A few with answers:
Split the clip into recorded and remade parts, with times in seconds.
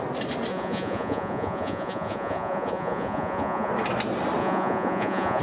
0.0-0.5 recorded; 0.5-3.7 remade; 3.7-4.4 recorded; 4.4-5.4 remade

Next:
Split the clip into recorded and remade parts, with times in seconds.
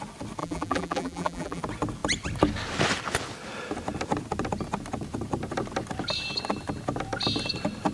0.0-0.4 recorded; 0.4-1.6 remade; 1.6-7.9 recorded